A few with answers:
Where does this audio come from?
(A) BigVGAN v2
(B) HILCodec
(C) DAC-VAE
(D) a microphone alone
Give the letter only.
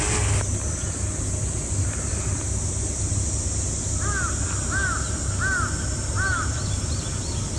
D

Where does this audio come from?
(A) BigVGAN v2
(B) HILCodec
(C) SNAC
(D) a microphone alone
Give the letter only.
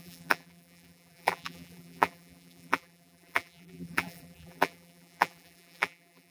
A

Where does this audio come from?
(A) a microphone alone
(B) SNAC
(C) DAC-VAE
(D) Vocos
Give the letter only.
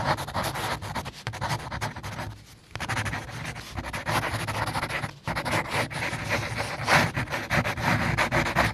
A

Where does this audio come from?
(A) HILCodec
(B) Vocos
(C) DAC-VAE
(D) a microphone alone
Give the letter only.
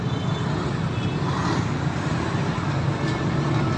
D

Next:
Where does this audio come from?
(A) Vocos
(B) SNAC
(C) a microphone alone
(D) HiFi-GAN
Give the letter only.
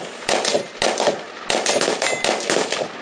C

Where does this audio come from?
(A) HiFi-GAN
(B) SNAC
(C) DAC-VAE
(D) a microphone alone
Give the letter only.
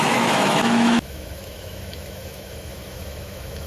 C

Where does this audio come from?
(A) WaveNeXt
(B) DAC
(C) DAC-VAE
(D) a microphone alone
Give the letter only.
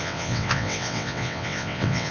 A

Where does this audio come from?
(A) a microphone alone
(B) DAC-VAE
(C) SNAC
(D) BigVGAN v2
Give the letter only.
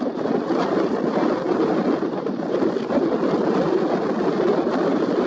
A